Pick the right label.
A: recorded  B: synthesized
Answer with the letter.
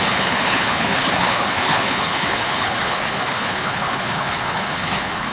B